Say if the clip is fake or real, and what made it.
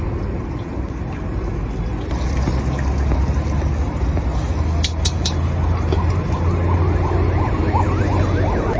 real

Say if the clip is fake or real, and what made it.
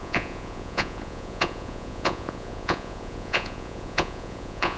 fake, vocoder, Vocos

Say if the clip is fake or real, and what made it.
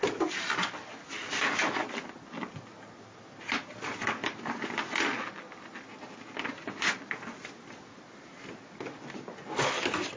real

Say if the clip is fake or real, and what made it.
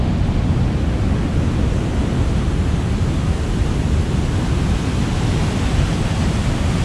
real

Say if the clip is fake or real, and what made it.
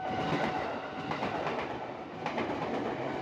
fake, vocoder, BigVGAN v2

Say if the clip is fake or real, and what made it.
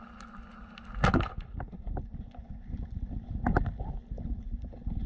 real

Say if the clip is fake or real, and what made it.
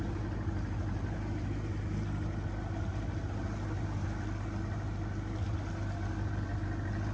real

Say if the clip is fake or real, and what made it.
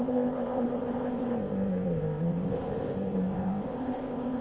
fake, codec, ZipCodec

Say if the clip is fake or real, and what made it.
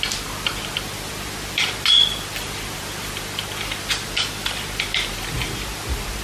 real